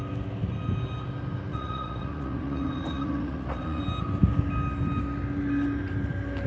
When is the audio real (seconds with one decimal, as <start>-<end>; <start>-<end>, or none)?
0.0-1.5; 3.8-6.5